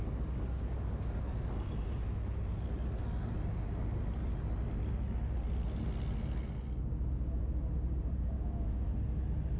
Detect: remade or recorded recorded